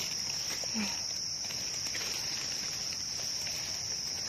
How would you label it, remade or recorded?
recorded